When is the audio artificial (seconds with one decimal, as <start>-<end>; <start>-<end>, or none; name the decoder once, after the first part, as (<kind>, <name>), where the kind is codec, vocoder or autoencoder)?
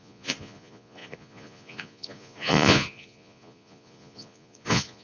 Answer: 0.0-5.0 (vocoder, Vocos)